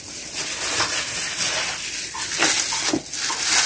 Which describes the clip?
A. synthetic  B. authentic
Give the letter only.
B